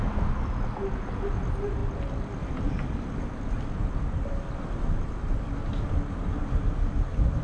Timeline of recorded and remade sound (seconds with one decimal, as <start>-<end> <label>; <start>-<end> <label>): 0.0-7.4 recorded